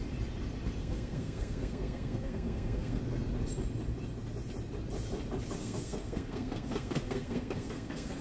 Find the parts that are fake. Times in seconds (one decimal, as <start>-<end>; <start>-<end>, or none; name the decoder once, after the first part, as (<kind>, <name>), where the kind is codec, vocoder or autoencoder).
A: 0.8-3.0 (codec, SNAC); 5.6-8.2